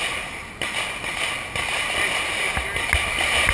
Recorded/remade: recorded